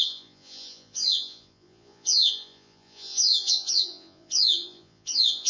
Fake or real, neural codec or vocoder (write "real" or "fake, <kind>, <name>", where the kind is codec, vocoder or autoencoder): fake, vocoder, Vocos